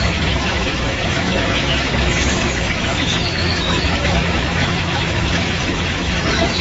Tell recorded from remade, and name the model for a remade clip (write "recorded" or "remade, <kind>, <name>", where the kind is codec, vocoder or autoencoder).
remade, autoencoder, DAC-VAE